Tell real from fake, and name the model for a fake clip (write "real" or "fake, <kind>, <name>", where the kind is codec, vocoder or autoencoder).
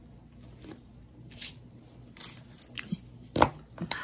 real